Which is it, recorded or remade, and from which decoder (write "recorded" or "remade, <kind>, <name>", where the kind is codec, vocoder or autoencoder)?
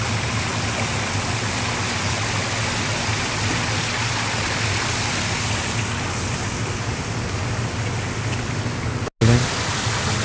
recorded